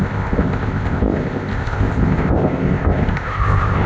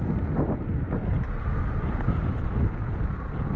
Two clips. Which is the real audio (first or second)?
second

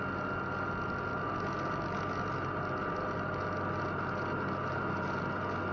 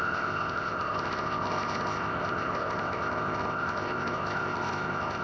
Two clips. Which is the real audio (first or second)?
first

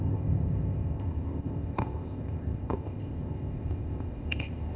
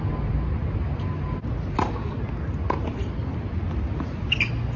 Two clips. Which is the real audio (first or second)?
second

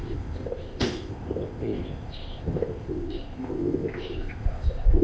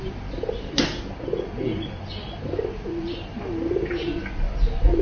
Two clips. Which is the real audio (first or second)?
second